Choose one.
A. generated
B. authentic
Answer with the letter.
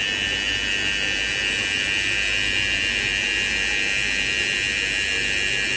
B